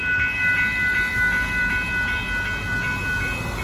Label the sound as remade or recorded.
recorded